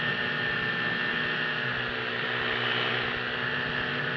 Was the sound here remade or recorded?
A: recorded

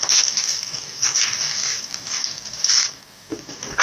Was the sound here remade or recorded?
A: remade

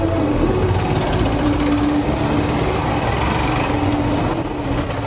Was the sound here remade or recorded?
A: recorded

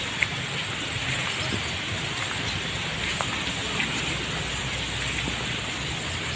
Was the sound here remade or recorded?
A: recorded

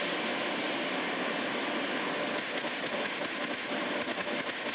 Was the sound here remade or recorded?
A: recorded